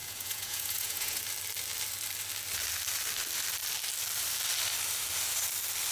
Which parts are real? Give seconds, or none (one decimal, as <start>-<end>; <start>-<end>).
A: 1.2-5.9